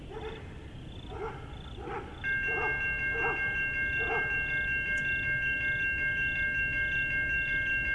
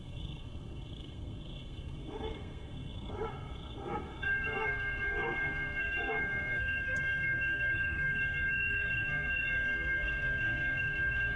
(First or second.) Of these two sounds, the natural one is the first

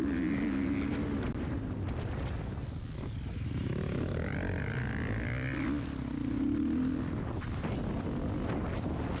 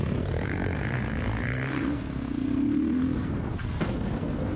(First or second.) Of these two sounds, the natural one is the first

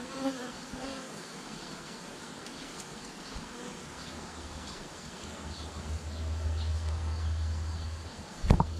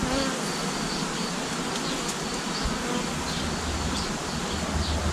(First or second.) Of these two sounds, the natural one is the second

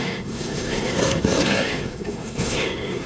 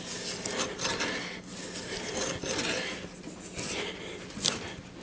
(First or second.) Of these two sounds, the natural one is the second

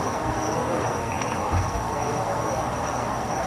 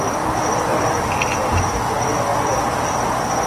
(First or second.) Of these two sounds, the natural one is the second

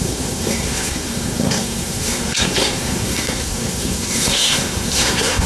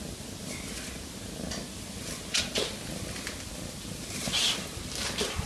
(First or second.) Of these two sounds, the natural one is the second